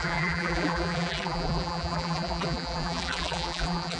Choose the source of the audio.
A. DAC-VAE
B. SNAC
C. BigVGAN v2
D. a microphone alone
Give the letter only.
C